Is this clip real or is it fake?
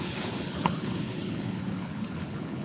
fake